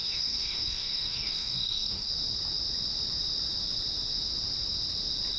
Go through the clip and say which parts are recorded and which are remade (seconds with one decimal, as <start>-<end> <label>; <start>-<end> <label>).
0.0-2.1 remade; 2.1-5.4 recorded